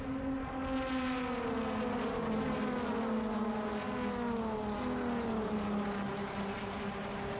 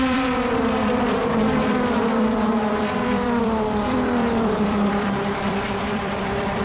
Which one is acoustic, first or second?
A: first